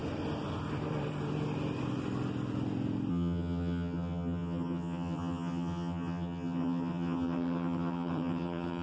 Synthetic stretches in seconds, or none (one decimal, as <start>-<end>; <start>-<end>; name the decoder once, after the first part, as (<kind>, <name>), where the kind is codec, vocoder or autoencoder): 3.1-8.8 (vocoder, HiFi-GAN)